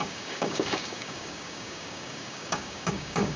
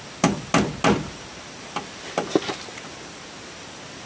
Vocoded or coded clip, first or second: first